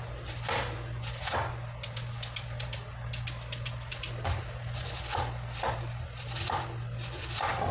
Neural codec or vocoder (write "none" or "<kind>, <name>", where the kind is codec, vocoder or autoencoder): none